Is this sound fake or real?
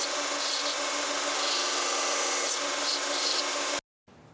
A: real